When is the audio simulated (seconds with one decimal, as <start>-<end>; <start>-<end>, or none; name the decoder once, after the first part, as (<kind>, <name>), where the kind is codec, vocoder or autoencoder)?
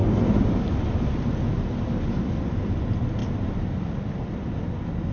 none